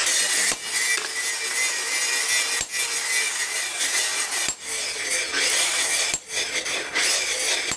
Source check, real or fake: real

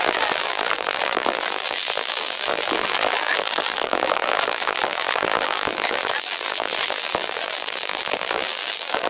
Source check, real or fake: fake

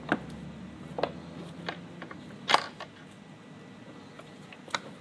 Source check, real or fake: real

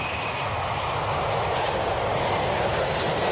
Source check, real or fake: real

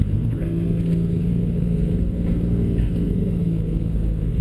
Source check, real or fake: fake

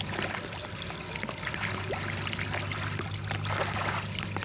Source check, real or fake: real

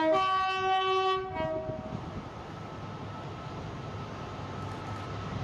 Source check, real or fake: real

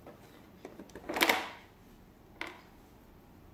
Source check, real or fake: real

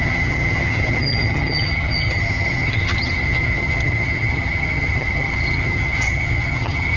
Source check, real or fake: fake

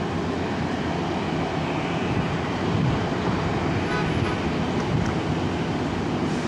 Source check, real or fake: real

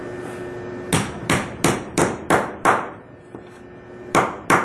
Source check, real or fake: real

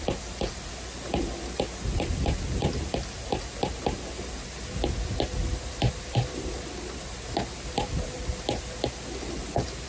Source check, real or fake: real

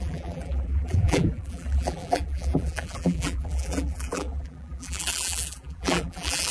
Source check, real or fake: fake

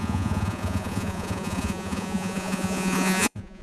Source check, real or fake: fake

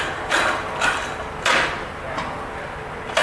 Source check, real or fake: real